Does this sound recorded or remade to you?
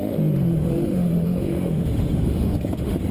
remade